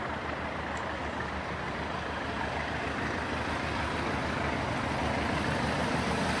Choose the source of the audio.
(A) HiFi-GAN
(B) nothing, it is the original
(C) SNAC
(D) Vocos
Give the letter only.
B